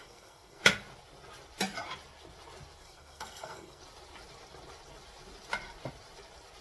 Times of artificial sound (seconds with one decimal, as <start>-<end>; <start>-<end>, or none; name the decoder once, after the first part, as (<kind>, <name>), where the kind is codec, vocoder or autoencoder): 0.0-0.6 (codec, SNAC); 2.8-3.8